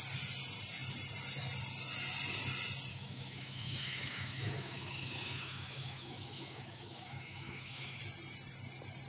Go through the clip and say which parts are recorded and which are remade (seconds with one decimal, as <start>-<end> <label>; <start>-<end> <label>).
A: 0.0-2.9 recorded; 2.9-8.0 remade; 8.0-9.1 recorded